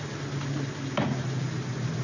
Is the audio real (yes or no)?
yes